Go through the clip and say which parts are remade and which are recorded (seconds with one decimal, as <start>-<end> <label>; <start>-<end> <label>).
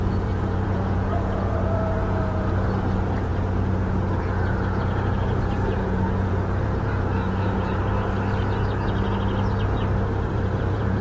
0.0-7.8 remade; 7.8-10.3 recorded; 10.3-11.0 remade